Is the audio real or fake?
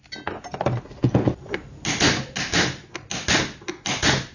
real